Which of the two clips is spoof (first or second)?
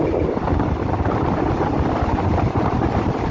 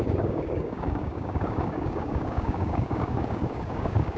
second